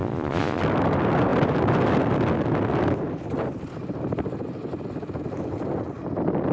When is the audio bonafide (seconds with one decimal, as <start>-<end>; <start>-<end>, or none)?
0.6-6.5

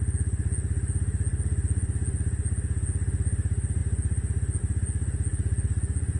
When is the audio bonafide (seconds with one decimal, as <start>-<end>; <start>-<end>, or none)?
0.0-6.2